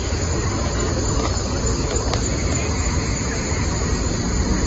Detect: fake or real real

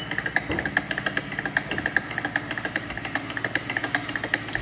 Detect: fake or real real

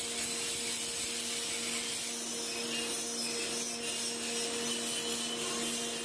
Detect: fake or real real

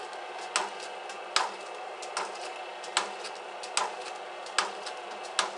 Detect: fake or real real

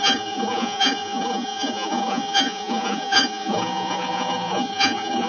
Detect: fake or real fake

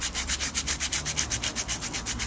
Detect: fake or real real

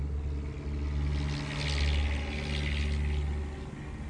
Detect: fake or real real